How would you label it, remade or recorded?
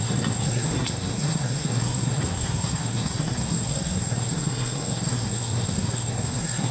remade